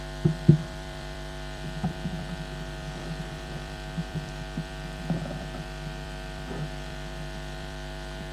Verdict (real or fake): fake